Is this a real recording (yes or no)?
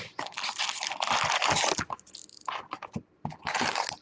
yes